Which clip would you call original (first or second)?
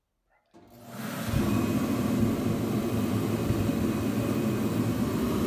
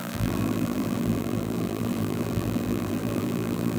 first